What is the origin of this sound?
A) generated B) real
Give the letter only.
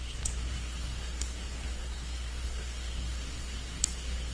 A